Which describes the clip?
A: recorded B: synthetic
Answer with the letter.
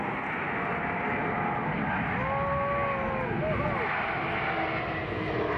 A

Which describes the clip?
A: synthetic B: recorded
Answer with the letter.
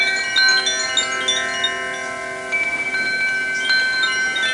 B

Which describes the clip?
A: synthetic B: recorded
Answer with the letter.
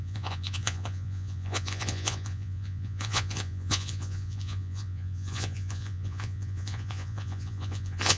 A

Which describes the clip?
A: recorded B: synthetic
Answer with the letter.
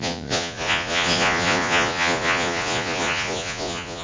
B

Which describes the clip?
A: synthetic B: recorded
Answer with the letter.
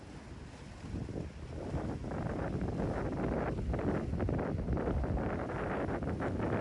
B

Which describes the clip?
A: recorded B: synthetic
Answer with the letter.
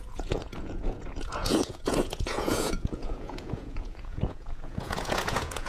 B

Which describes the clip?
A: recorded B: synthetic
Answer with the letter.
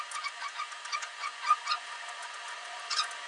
B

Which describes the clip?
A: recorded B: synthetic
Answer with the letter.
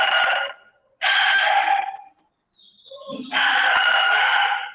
A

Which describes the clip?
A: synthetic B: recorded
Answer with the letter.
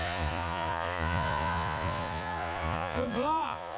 A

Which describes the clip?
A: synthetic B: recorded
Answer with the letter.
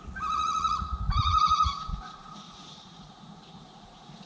A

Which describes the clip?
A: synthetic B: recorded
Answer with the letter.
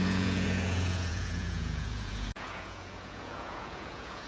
A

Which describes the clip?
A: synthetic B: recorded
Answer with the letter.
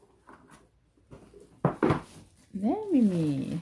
B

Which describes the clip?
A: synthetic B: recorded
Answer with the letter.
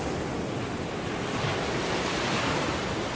B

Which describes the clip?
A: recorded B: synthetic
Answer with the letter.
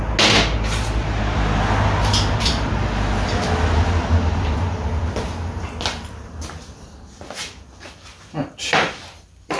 A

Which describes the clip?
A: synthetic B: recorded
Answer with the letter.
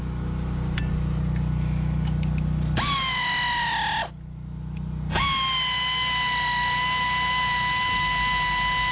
B